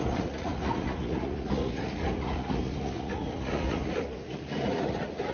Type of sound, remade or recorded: remade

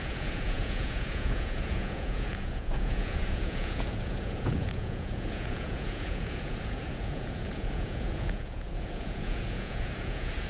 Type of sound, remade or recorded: remade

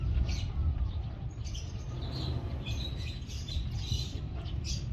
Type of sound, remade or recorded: recorded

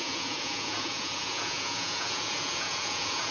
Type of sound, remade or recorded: remade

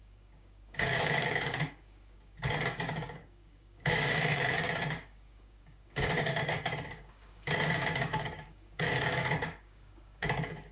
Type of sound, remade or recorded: remade